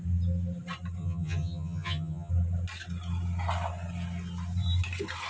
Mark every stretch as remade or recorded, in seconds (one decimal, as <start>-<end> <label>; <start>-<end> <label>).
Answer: 0.0-1.0 recorded; 1.0-2.3 remade; 2.3-5.3 recorded